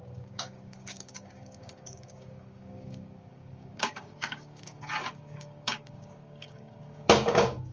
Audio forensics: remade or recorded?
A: remade